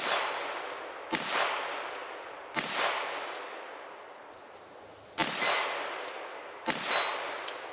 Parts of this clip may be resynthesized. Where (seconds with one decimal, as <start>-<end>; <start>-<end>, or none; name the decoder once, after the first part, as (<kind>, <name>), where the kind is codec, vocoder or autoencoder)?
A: none